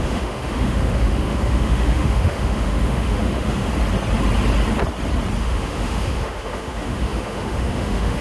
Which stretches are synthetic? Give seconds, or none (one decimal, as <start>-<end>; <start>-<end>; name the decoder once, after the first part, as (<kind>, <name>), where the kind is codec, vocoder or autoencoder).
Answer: 0.0-3.7 (autoencoder, DAC-VAE); 5.4-8.2